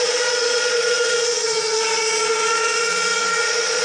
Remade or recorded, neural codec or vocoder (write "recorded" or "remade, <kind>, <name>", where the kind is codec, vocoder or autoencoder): remade, vocoder, Vocos